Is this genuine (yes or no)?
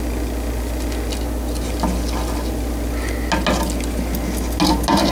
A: yes